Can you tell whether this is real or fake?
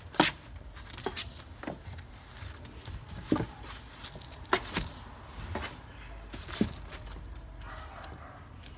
real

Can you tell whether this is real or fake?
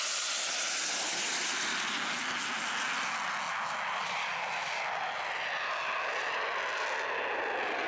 real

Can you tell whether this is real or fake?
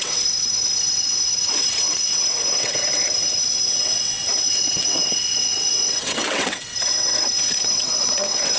fake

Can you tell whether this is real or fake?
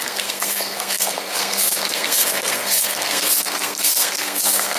fake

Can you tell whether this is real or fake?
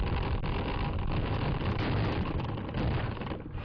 real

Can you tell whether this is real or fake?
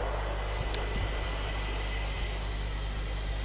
real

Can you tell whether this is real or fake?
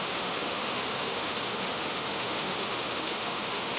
fake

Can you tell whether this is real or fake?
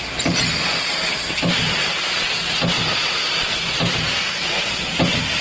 real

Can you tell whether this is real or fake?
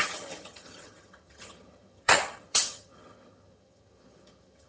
fake